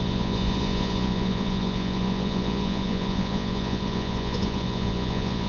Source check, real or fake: fake